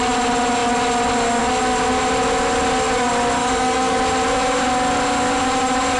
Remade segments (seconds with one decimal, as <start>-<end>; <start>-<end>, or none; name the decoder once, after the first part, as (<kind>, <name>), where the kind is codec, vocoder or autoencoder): 3.4-4.0 (codec, DAC)

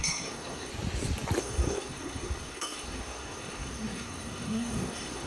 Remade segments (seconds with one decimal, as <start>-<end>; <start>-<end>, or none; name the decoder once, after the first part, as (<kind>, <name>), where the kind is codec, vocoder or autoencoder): 0.0-0.7 (codec, SNAC); 1.4-5.3

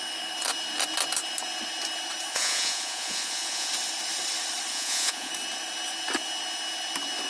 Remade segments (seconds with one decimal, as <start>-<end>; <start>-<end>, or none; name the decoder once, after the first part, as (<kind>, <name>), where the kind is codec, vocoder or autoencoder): 2.3-3.7 (vocoder, Vocos); 4.7-5.3

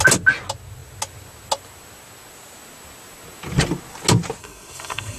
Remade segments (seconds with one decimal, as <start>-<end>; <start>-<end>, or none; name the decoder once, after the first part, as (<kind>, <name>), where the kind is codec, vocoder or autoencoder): 4.4-5.2 (codec, SNAC)

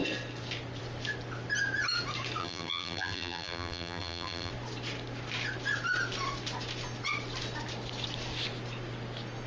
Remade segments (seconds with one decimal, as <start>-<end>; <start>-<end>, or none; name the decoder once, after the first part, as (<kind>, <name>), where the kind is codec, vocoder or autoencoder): 2.4-4.5 (vocoder, BigVGAN v2)